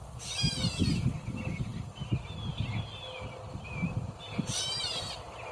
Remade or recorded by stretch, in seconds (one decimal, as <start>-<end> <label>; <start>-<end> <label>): 0.0-5.5 recorded